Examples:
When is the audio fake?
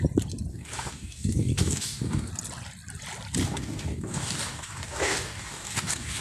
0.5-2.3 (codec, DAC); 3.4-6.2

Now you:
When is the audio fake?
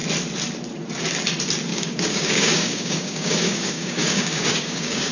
1.7-5.1 (codec, DAC)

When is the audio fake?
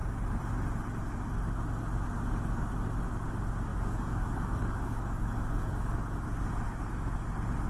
3.7-6.0 (codec, DAC)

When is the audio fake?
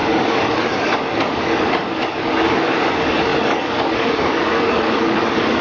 0.0-5.6 (codec, DAC)